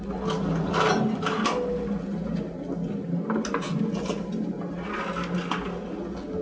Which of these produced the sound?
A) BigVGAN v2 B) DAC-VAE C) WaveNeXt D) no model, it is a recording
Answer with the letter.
D